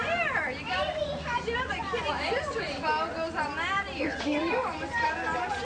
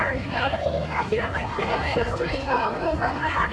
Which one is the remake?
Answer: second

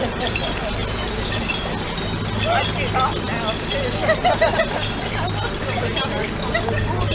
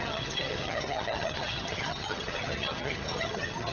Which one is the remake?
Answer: second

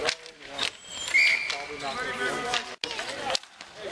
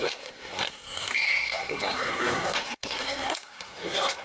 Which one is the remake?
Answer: second